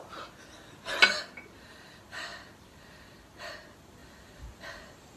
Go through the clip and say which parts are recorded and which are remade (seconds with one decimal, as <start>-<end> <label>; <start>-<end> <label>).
0.0-5.2 recorded

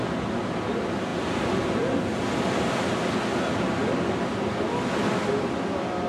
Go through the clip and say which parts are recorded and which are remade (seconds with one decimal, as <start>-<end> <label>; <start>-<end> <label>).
0.0-6.1 recorded